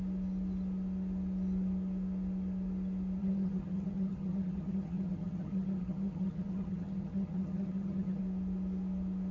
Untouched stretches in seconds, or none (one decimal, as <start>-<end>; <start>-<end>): 0.0-3.2; 8.2-9.3